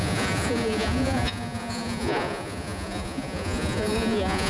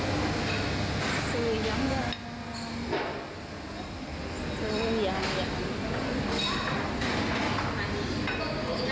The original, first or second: second